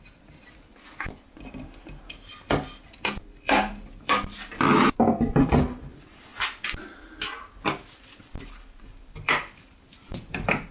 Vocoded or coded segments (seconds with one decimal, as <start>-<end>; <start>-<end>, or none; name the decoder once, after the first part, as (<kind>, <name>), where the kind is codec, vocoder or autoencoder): 0.0-6.3 (vocoder, BigVGAN v2); 8.4-10.7